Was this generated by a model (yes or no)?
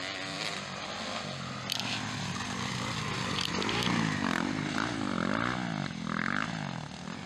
no